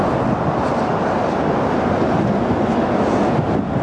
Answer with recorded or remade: recorded